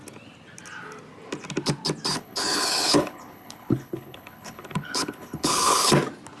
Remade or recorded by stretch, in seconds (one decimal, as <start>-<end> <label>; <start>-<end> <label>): 0.0-2.1 recorded; 2.1-5.9 remade; 5.9-6.4 recorded